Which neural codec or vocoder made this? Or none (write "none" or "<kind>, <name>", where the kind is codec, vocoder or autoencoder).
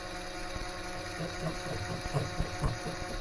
none